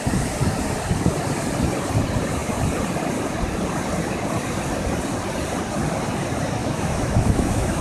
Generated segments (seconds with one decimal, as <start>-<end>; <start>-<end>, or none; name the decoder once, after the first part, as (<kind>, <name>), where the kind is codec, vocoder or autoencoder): 6.6-7.8 (autoencoder, DAC-VAE)

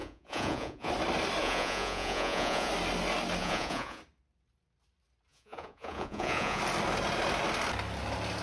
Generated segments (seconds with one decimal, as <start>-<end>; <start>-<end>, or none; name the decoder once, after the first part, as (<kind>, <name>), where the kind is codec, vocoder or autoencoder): 0.0-0.9 (vocoder, Vocos); 1.4-2.7; 3.4-4.0; 5.3-6.6

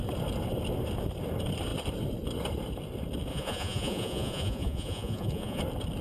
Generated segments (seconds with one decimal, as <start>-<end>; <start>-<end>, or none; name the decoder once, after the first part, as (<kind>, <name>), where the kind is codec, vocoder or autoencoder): 3.3-5.6 (vocoder, Vocos)

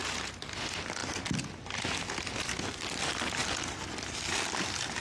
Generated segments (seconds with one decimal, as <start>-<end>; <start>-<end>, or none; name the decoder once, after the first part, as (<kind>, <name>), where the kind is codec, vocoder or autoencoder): none

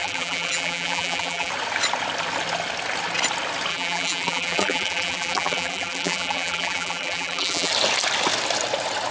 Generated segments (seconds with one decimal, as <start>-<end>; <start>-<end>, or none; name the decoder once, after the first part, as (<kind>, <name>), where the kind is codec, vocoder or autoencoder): 0.0-1.5 (vocoder, BigVGAN v2); 3.7-7.7

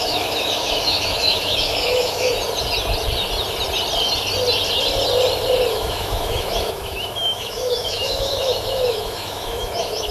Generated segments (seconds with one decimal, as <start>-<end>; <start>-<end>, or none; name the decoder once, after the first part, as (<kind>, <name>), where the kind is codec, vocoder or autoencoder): 0.0-2.3 (autoencoder, DAC-VAE); 5.7-10.1